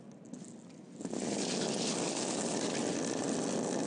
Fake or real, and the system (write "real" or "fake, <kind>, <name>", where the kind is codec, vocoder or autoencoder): real